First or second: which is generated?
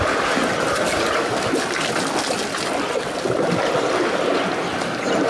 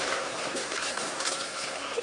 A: second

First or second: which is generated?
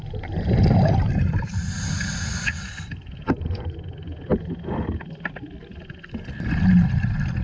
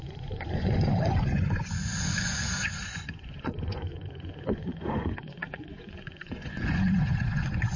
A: second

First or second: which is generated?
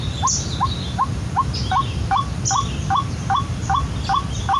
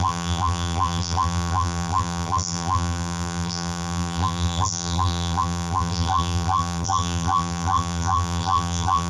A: second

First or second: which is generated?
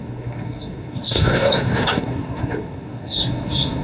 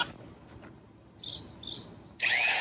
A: first